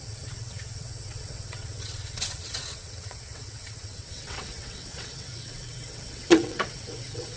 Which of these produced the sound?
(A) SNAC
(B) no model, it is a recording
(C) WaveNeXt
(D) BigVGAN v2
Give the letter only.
C